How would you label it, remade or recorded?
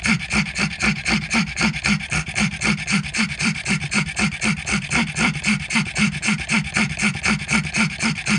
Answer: remade